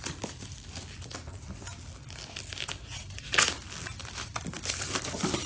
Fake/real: real